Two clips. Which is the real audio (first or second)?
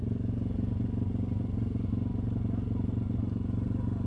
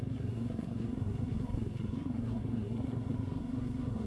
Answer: first